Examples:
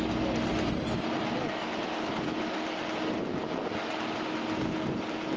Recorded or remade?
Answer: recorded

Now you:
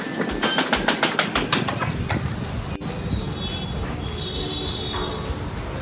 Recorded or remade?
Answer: recorded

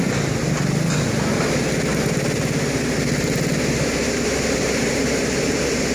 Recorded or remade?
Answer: recorded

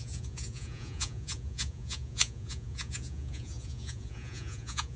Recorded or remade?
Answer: remade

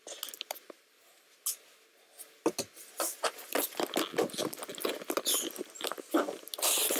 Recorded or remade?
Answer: recorded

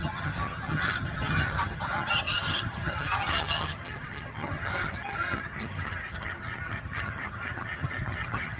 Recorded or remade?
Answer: remade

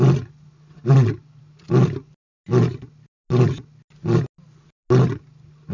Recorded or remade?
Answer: recorded